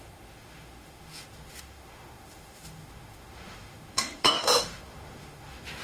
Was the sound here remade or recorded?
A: remade